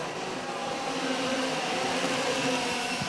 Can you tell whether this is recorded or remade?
recorded